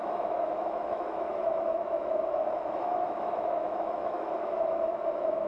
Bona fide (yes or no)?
no